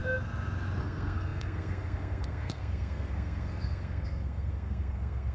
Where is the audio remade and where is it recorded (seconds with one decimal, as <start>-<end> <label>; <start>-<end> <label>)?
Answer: 0.0-0.8 recorded; 0.8-5.3 remade